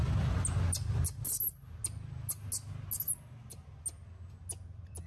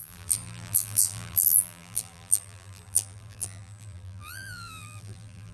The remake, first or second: second